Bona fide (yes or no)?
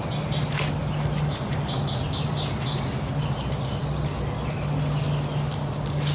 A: yes